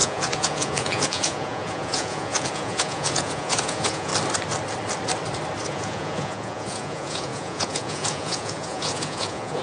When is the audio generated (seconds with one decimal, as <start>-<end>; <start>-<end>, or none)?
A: 0.0-4.1; 5.7-9.6

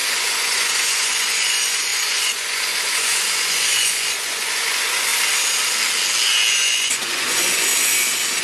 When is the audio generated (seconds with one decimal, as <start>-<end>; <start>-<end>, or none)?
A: 0.0-5.1; 6.5-7.7

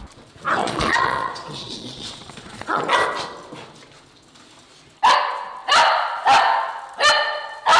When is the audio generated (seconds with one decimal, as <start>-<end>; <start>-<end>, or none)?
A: 0.6-2.8

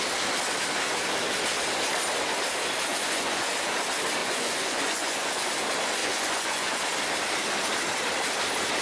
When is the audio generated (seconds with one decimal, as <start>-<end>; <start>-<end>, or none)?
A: 2.9-3.5; 4.2-5.5; 6.0-6.8

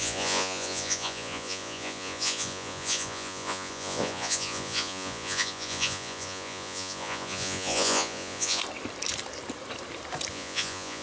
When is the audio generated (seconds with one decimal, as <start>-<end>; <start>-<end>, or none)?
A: 0.0-8.6; 10.3-11.0

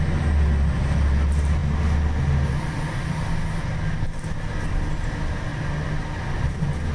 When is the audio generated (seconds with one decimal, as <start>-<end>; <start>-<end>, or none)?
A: none

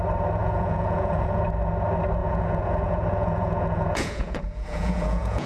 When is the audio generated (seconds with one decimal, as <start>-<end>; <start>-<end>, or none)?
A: 0.4-1.4; 2.2-5.5